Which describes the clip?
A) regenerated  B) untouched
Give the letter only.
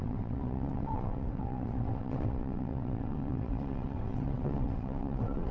A